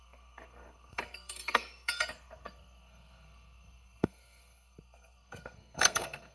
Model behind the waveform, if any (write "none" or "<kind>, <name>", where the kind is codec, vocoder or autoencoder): codec, SNAC